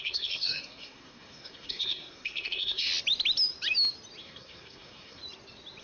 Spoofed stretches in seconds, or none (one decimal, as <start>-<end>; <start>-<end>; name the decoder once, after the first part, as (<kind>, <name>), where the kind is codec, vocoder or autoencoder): 0.0-2.9 (codec, SNAC); 4.2-5.2